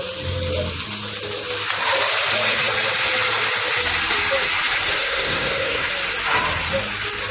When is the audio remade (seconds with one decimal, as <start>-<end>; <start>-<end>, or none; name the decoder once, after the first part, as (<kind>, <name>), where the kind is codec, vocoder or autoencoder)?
5.0-5.9 (codec, SNAC)